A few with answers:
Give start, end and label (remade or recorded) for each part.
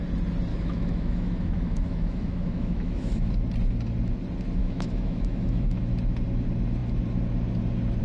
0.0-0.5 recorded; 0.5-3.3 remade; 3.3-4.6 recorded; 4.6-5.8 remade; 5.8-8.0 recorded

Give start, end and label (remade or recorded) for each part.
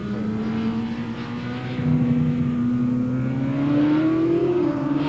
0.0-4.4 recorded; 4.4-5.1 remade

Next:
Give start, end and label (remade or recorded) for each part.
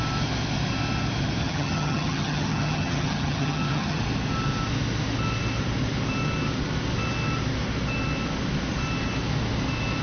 0.0-1.4 recorded; 1.4-4.0 remade; 4.0-10.0 recorded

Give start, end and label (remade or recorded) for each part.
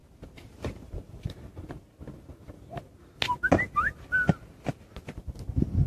0.0-5.9 recorded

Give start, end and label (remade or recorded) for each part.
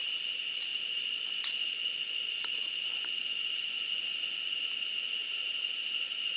0.0-0.7 recorded; 0.7-3.5 remade; 3.5-6.4 recorded